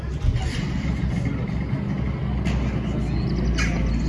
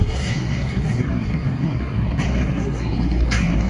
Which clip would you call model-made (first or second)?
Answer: second